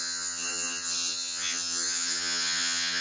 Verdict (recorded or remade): remade